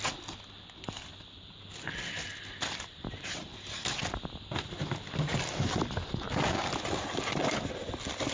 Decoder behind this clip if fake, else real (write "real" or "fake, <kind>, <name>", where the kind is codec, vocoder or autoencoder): real